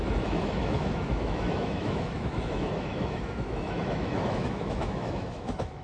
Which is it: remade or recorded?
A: remade